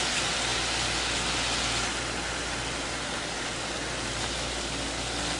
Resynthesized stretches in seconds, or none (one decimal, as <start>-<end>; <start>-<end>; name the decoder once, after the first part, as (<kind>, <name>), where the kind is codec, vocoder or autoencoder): none